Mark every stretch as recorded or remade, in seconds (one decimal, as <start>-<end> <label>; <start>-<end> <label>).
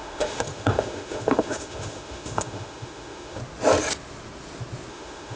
0.0-3.4 remade; 3.4-4.9 recorded; 4.9-5.4 remade